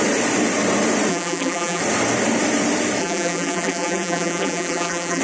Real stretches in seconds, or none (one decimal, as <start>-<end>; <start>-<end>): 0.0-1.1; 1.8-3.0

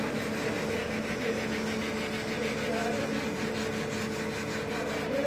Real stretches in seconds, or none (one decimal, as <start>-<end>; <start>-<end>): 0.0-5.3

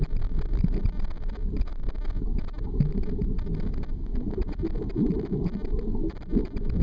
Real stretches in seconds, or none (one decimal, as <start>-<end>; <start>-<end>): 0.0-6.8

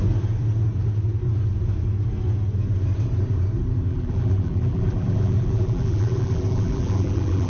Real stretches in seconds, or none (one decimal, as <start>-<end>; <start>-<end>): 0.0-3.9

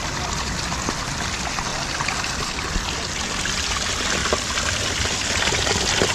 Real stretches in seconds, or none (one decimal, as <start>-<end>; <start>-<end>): 0.0-4.2; 5.1-6.1